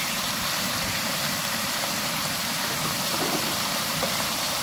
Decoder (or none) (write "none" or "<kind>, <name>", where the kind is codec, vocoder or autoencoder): vocoder, BigVGAN v2